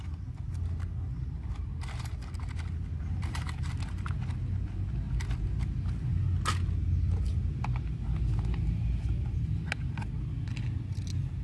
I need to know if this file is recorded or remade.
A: recorded